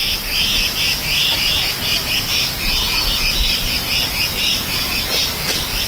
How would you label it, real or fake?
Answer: real